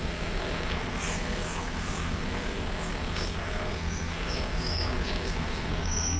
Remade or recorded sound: remade